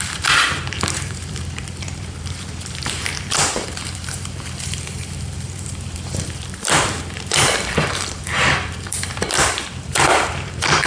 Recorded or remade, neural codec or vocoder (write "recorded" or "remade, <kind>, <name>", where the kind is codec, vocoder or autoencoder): remade, vocoder, BigVGAN v2